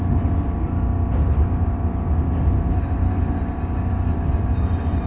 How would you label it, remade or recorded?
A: recorded